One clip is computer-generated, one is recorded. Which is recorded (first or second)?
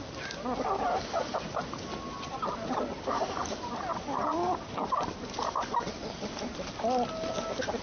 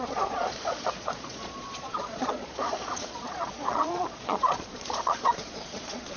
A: first